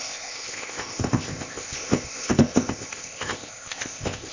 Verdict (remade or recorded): remade